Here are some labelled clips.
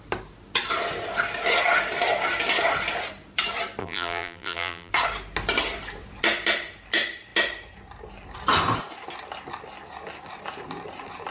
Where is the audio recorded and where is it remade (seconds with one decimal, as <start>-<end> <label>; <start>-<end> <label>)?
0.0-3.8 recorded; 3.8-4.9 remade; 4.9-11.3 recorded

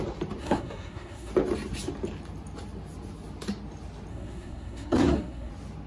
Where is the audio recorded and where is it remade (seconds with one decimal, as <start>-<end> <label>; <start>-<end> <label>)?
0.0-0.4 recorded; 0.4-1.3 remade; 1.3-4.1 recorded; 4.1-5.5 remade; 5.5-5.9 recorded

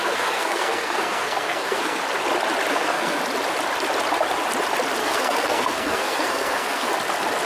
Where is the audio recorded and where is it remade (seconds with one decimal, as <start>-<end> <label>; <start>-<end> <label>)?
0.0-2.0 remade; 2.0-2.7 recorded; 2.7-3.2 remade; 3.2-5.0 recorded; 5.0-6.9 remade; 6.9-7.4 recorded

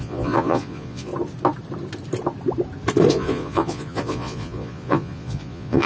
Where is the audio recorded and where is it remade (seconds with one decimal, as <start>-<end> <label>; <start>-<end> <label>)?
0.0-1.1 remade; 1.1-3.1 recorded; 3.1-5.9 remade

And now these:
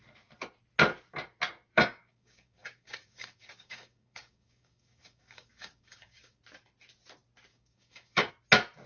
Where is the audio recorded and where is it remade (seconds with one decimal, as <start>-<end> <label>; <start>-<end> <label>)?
0.0-1.7 recorded; 1.7-6.4 remade; 6.4-7.5 recorded; 7.5-8.3 remade; 8.3-8.9 recorded

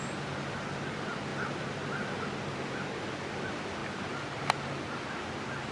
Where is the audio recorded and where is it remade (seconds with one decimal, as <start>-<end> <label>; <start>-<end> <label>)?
0.0-5.7 recorded

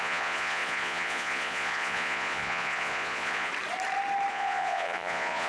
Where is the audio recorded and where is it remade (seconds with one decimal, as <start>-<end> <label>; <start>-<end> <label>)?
0.0-3.5 remade; 3.5-4.3 recorded; 4.3-5.5 remade

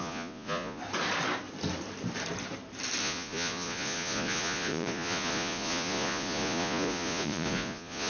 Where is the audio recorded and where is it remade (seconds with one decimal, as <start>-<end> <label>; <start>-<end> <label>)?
0.0-0.8 remade; 0.8-3.0 recorded; 3.0-8.1 remade